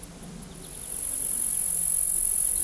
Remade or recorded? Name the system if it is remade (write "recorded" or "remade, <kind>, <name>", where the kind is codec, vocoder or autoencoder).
recorded